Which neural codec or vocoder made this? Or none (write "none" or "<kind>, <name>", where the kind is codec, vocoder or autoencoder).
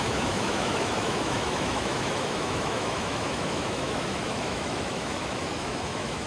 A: autoencoder, DAC-VAE